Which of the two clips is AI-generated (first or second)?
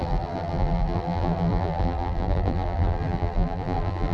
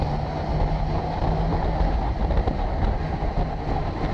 first